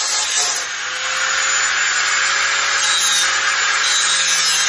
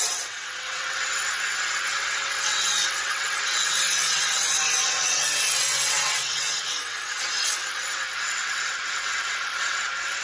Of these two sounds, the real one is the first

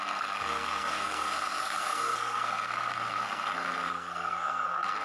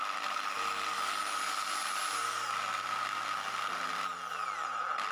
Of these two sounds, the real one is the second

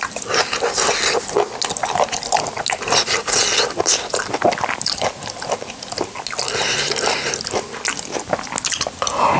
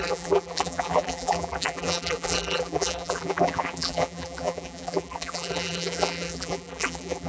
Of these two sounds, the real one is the first